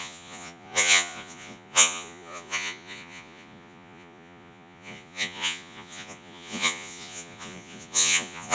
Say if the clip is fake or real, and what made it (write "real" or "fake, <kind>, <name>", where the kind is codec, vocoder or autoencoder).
fake, vocoder, Vocos